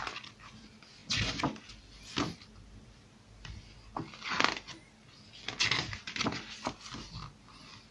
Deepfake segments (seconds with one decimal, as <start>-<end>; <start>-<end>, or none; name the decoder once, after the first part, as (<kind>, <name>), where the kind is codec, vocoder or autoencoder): none